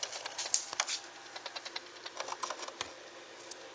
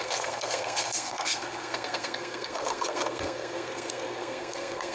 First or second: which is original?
first